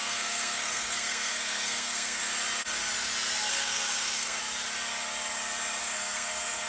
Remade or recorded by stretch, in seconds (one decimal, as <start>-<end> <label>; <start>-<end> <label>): 0.0-2.2 remade; 2.2-3.5 recorded; 3.5-4.4 remade; 4.4-5.8 recorded; 5.8-6.7 remade